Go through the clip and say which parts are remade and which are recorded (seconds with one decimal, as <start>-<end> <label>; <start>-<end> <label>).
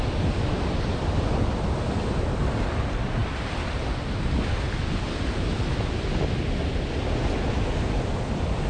0.0-8.7 recorded